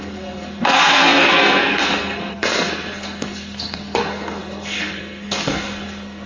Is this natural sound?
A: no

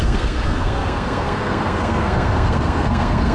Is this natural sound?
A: no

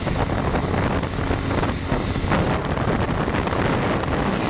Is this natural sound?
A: yes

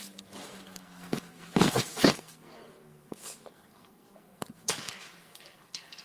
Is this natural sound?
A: no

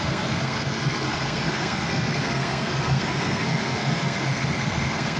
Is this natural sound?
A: no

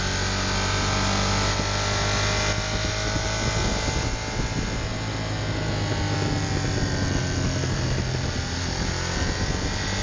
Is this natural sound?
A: yes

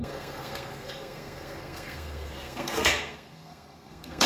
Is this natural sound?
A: no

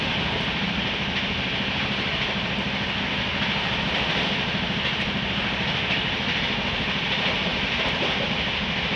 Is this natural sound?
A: yes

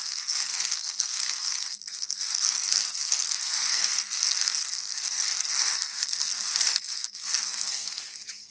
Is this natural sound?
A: no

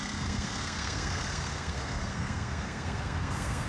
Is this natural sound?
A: no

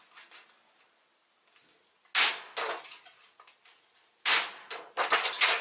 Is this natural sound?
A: yes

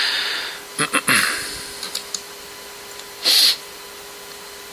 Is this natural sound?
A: yes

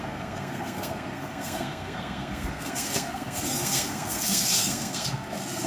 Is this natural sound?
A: no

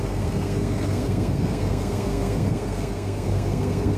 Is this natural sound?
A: no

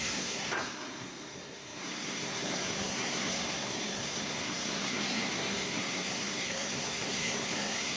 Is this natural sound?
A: no